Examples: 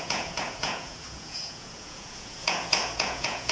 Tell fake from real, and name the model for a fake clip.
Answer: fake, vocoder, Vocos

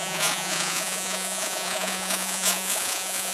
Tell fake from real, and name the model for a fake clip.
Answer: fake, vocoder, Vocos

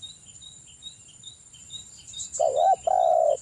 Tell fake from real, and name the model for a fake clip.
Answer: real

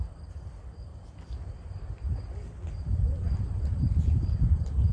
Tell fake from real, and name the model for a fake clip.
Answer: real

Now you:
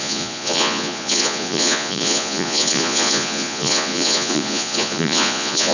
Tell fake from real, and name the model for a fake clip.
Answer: fake, vocoder, Vocos